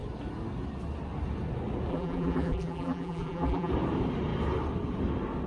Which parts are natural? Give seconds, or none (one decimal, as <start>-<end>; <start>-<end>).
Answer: 0.0-1.9; 3.7-5.5